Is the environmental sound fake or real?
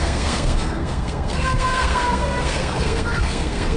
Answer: fake